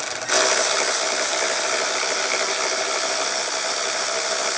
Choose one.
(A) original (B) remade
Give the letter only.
A